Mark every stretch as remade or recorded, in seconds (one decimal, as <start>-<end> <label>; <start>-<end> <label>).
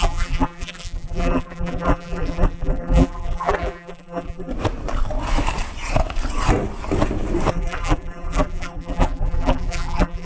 0.0-4.5 remade; 4.5-7.5 recorded; 7.5-10.3 remade